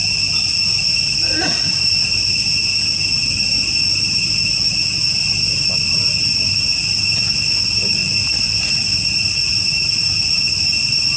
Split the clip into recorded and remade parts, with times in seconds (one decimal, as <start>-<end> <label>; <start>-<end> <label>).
0.0-11.2 recorded